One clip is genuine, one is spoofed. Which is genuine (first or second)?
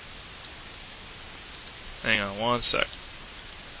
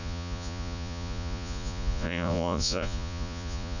first